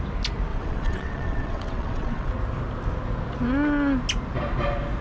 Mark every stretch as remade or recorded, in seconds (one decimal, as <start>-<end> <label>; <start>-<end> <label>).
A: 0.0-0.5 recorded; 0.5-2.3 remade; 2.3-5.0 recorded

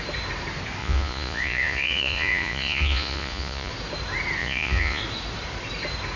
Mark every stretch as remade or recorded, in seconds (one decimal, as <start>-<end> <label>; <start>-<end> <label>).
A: 0.0-0.8 recorded; 0.8-3.7 remade; 3.7-4.4 recorded; 4.4-5.0 remade; 5.0-6.2 recorded

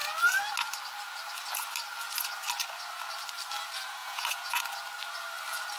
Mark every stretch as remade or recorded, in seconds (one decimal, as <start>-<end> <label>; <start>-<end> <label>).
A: 0.0-4.0 recorded; 4.0-4.6 remade; 4.6-5.8 recorded